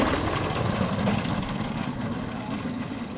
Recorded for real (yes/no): yes